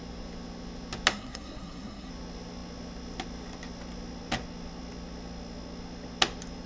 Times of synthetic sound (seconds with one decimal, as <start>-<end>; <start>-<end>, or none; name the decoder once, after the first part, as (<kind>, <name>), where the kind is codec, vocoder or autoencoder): 1.1-2.1 (codec, SNAC)